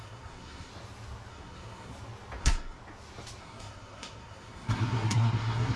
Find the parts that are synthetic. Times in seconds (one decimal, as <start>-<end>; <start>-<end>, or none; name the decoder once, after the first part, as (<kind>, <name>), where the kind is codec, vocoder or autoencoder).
0.0-0.7 (codec, SNAC); 1.3-1.9; 2.4-2.8; 3.4-5.8